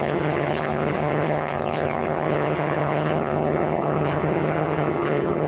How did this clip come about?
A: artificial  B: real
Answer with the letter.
A